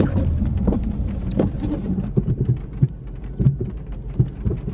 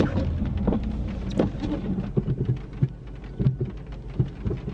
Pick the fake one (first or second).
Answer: first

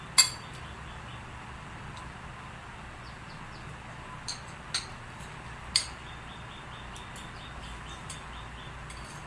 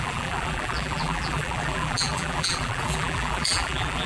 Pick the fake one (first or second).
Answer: second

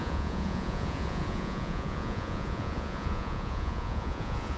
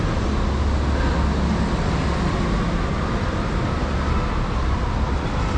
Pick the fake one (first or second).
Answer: first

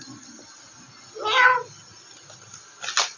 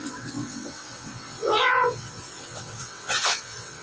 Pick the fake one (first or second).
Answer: second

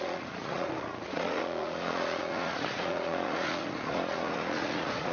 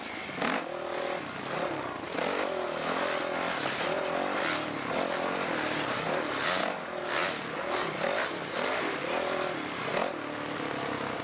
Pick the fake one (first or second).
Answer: first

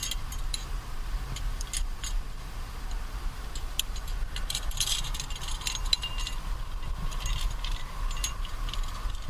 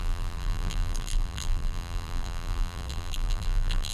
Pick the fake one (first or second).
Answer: second